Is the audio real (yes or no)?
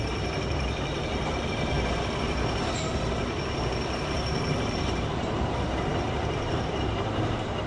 no